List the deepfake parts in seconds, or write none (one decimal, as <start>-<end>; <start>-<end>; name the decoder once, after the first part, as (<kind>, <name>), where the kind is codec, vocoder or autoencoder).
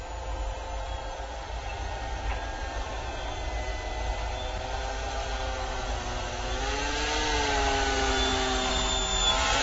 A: 2.6-3.1 (vocoder, BigVGAN v2)